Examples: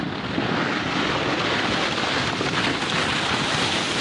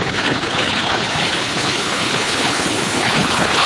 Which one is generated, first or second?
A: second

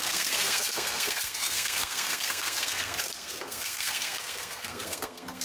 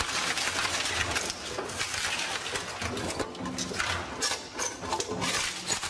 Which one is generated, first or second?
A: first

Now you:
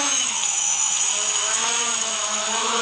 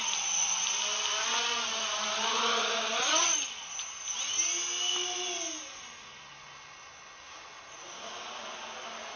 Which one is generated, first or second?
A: first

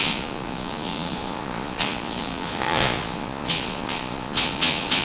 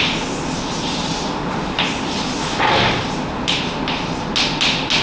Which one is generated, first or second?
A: first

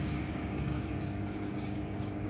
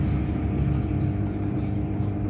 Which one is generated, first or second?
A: first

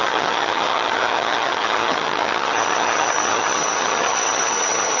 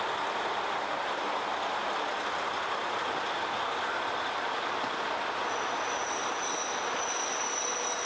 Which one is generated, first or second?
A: first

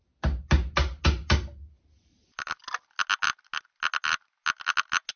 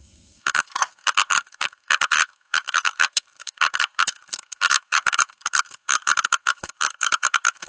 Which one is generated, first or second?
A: second